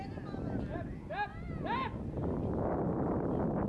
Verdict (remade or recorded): remade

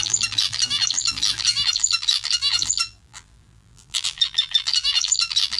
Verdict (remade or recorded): remade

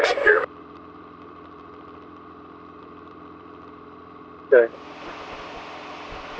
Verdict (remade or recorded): remade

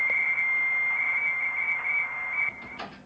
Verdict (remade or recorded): recorded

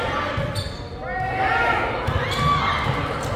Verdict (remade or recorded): recorded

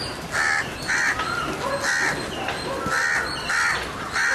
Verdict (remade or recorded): recorded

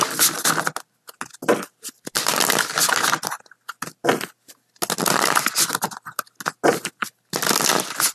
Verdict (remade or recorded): recorded